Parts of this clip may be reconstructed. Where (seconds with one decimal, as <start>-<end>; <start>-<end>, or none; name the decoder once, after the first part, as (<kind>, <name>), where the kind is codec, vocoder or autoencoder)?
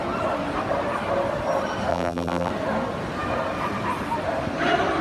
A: 1.9-2.5 (vocoder, BigVGAN v2)